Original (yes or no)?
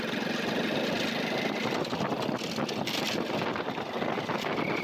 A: yes